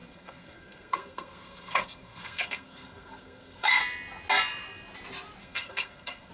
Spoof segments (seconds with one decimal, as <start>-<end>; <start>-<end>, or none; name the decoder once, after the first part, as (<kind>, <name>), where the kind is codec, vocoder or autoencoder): 0.0-3.8 (codec, SNAC); 5.4-6.3